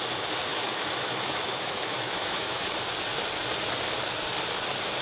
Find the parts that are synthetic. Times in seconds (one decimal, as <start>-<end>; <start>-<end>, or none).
0.5-2.6

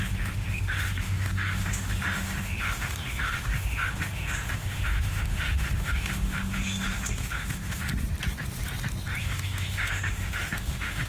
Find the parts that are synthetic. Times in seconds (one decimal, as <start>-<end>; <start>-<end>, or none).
0.0-7.9; 9.2-11.1